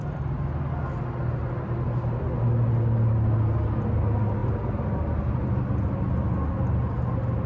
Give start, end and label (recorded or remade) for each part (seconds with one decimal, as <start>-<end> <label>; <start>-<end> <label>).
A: 0.0-7.5 recorded